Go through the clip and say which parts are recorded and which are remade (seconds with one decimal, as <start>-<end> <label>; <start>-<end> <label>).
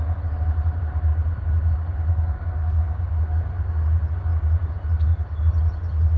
0.0-2.1 recorded; 2.1-3.0 remade; 3.0-6.2 recorded